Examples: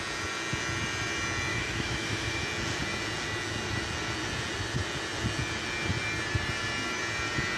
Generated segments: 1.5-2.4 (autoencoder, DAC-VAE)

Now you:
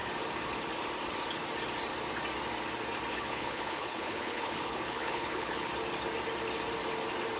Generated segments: 3.1-5.7 (codec, HILCodec)

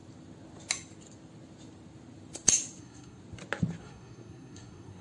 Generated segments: 2.8-3.2 (codec, SNAC); 3.8-5.0

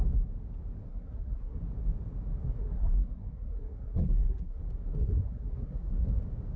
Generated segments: 0.9-1.6 (codec, SNAC); 2.4-4.6; 5.0-6.0

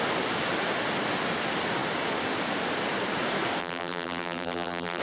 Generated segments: 3.6-5.0 (vocoder, BigVGAN v2)

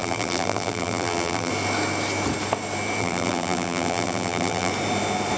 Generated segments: 0.0-1.5 (vocoder, BigVGAN v2); 3.0-4.7

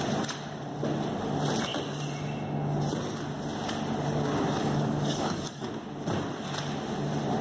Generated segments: 4.6-5.7 (codec, DAC)

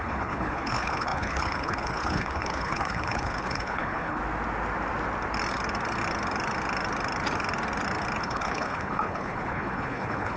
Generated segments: 0.0-4.2 (codec, HILCodec); 8.2-10.4